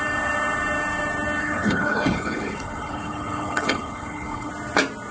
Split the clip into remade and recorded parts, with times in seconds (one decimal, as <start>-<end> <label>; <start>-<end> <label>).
0.0-1.4 recorded; 1.4-4.5 remade; 4.5-5.1 recorded